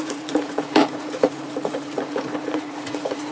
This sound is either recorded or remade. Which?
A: remade